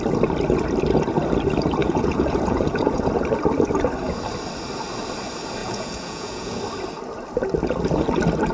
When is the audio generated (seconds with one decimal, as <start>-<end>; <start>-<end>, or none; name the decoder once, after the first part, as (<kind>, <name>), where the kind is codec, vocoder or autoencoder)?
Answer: 1.8-3.1 (vocoder, Vocos); 5.6-6.6